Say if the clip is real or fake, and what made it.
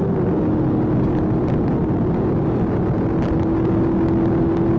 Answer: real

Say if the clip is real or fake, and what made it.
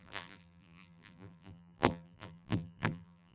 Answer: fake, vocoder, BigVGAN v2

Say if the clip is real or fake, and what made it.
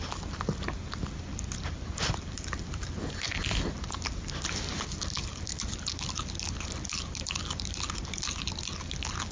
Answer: real